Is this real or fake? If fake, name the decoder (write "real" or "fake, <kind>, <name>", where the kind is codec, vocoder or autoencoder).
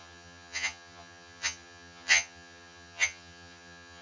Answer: fake, vocoder, HiFi-GAN